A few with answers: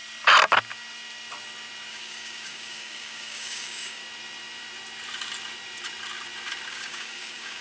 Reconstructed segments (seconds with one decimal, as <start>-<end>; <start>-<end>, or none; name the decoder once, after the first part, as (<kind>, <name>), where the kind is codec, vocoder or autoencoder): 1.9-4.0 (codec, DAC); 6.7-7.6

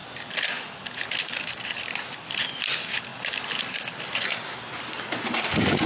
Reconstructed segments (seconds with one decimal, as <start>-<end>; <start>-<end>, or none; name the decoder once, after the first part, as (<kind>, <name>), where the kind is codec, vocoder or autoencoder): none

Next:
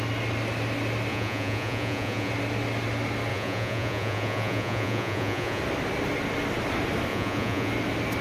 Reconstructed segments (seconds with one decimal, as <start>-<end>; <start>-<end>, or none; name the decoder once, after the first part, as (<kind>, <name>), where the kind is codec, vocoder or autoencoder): 1.1-2.3 (vocoder, Vocos); 3.3-5.6; 7.1-7.7